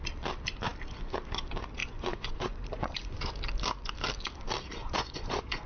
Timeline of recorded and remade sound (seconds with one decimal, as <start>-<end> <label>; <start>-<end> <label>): 0.0-1.8 recorded; 1.8-3.3 remade; 3.3-4.8 recorded; 4.8-5.7 remade